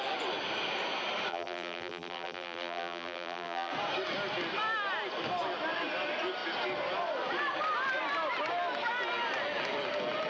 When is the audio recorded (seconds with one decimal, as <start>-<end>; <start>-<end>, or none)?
0.0-1.3; 3.7-10.3